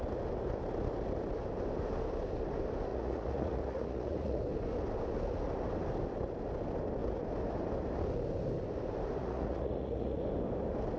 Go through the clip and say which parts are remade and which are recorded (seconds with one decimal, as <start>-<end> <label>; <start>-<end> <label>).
0.0-2.9 recorded; 2.9-4.4 remade; 4.4-9.2 recorded; 9.2-10.2 remade; 10.2-11.0 recorded